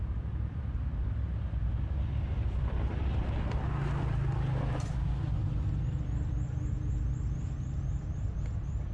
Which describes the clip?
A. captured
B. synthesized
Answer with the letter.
A